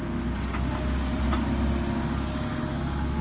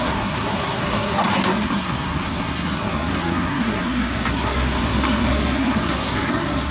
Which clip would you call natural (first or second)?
first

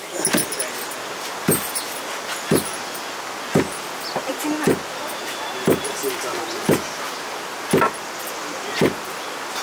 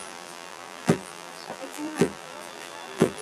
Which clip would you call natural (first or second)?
first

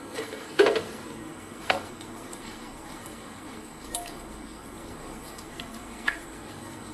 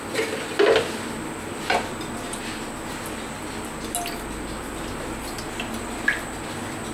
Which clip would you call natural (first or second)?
second